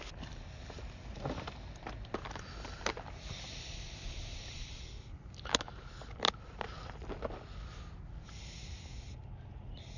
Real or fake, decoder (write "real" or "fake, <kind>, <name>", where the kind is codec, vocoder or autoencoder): real